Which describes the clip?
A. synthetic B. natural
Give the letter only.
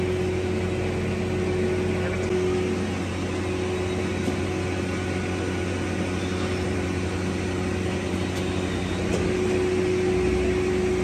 B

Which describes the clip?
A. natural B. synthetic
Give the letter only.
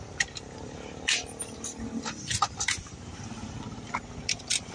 B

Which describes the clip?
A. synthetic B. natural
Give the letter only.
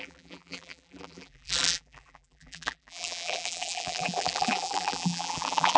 A